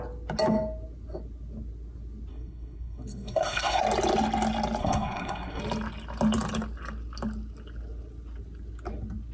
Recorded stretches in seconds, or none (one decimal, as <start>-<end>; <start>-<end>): 0.0-2.3; 3.8-4.8; 5.6-9.3